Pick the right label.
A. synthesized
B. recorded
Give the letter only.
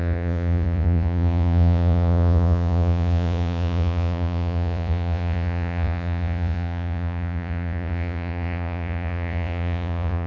A